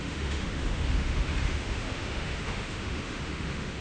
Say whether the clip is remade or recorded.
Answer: remade